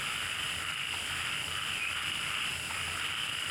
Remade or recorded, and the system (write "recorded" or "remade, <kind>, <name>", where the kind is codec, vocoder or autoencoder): recorded